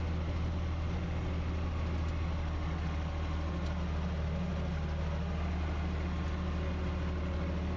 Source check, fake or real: real